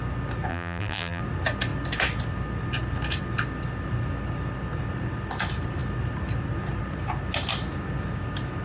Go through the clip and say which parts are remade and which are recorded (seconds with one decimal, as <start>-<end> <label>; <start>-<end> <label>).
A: 0.0-0.5 recorded; 0.5-1.2 remade; 1.2-8.6 recorded